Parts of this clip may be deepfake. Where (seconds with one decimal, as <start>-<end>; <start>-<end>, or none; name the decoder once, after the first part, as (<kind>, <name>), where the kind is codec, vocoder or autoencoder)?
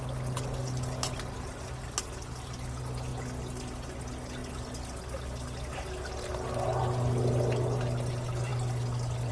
none